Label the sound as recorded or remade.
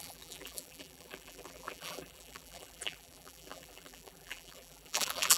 remade